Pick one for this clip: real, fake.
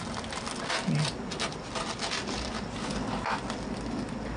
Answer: real